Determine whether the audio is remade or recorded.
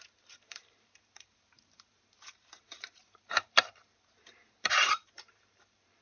remade